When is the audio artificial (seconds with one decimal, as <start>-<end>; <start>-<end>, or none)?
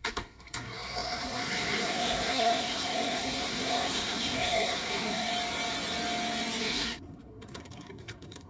0.0-5.3; 6.6-8.5